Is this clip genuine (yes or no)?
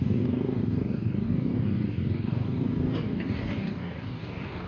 no